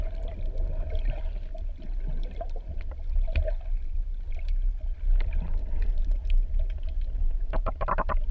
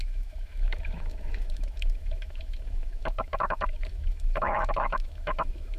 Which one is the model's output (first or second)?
second